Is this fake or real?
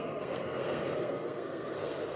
fake